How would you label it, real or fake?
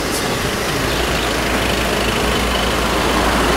real